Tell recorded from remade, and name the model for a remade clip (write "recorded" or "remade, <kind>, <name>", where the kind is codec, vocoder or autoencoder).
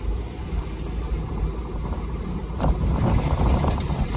remade, vocoder, BigVGAN v2